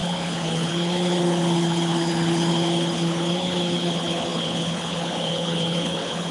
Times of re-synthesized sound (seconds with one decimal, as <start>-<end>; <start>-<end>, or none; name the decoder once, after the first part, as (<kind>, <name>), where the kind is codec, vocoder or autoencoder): 0.0-6.3 (codec, HILCodec)